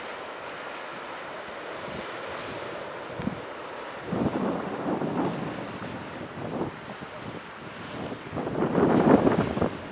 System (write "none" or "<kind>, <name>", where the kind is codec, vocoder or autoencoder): none